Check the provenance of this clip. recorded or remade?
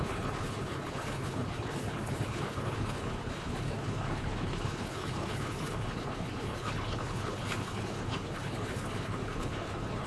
remade